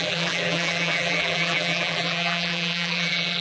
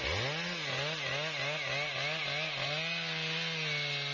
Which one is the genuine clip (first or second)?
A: second